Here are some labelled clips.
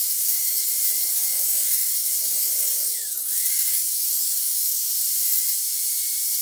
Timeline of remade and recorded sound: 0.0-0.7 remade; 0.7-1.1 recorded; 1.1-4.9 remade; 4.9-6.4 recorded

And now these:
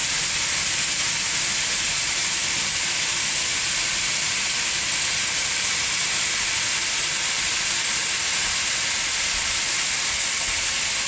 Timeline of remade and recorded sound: 0.0-11.1 recorded

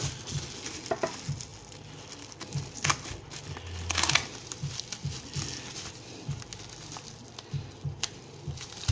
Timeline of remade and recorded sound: 0.0-8.9 recorded

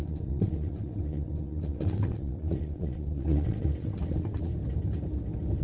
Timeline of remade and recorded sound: 0.0-4.5 remade; 4.5-5.6 recorded

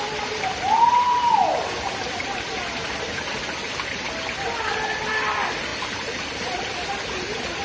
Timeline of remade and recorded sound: 0.0-7.6 recorded

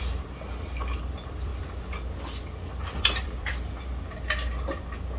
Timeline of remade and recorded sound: 0.0-1.5 remade; 1.5-3.0 recorded; 3.0-3.5 remade; 3.5-5.2 recorded